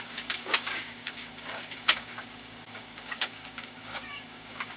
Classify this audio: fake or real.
fake